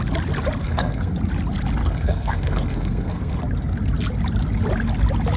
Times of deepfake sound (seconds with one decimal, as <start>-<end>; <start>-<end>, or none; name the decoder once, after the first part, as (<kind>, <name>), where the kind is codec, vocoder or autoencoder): 0.6-1.1 (codec, SNAC); 1.8-3.4